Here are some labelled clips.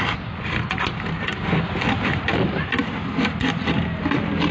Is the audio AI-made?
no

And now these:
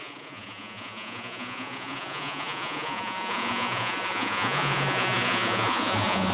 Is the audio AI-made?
yes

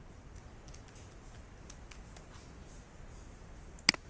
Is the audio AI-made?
no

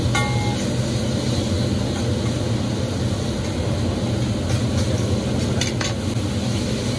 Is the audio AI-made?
no